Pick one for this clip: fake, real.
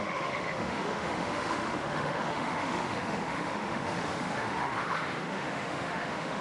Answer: fake